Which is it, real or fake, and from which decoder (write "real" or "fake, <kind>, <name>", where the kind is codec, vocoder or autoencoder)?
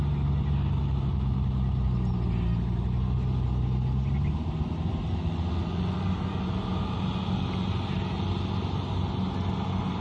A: real